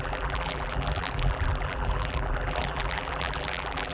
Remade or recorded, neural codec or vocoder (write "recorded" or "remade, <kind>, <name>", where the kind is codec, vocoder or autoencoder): remade, vocoder, BigVGAN v2